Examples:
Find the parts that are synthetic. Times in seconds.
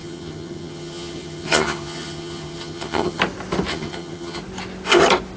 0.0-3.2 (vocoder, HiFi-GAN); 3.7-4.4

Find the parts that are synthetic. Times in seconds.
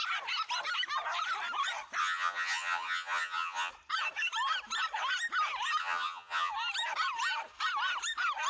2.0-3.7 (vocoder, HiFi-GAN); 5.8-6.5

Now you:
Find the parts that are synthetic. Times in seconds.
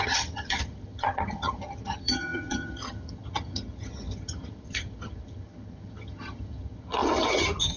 0.0-7.8 (vocoder, HiFi-GAN)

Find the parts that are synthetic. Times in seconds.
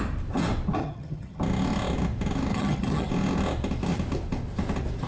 0.8-1.4 (vocoder, HiFi-GAN); 2.5-3.1